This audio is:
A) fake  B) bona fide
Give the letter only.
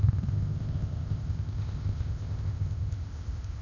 A